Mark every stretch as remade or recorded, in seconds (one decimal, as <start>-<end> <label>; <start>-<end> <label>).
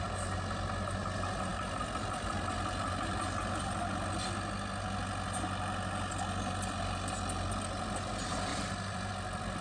0.0-1.5 recorded; 1.5-3.8 remade; 3.8-8.5 recorded; 8.5-9.1 remade; 9.1-9.6 recorded